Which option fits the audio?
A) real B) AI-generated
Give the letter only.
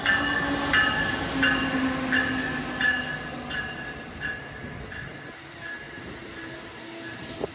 A